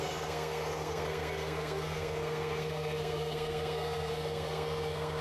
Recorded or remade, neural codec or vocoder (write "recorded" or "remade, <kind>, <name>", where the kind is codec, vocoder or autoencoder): remade, codec, SNAC